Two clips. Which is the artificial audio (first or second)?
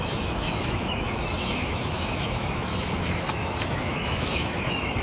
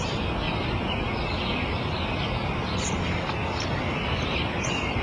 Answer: first